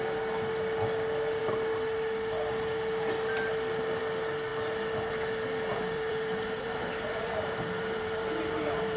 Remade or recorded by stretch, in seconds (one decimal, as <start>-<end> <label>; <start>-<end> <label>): 0.0-5.7 recorded; 5.7-9.0 remade